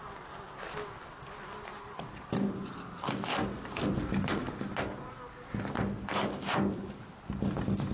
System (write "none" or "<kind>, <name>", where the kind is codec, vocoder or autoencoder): none